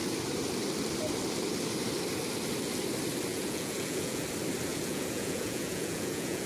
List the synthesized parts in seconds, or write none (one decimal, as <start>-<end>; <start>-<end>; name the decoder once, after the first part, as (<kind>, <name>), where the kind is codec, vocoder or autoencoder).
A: 3.3-4.2 (vocoder, Vocos); 4.7-6.5